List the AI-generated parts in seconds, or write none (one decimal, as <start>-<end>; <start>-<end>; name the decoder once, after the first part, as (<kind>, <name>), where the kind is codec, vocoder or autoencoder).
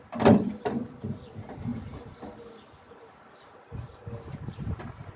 0.0-1.7 (vocoder, BigVGAN v2); 4.8-5.2